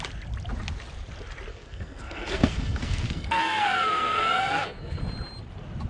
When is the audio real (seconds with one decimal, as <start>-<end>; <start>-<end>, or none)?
0.0-1.5; 5.0-5.9